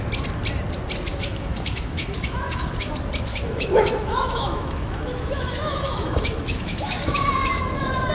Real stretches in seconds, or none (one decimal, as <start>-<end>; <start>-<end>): 0.0-1.1; 2.9-3.3